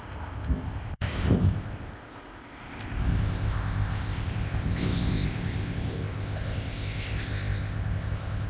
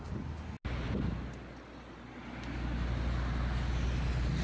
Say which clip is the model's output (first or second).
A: first